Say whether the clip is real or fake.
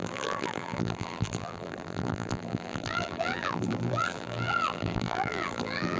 fake